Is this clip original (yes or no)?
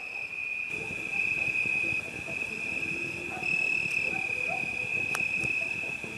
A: yes